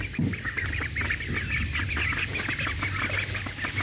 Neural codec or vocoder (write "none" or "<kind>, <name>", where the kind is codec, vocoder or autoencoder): none